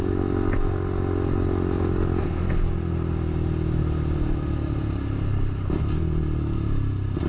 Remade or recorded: recorded